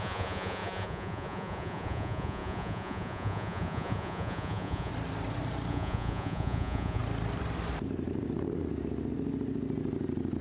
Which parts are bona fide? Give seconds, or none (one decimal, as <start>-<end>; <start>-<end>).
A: 4.9-5.7; 7.0-10.4